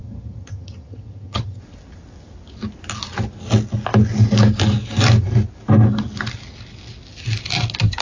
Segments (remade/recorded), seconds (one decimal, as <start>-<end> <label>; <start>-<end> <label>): 0.0-1.6 remade; 1.6-8.0 recorded